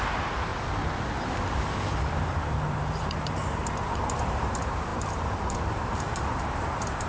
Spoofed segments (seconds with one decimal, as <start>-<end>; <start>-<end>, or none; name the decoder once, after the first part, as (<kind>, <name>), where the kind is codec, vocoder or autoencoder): 0.0-0.5 (vocoder, BigVGAN v2); 2.1-7.1